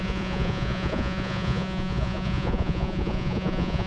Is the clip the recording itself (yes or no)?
no